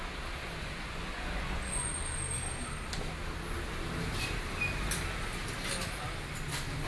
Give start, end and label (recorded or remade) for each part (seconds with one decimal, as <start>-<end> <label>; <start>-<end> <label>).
0.0-0.4 recorded; 0.4-1.9 remade; 1.9-6.9 recorded